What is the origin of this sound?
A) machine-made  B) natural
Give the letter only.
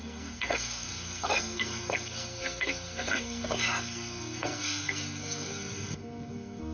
A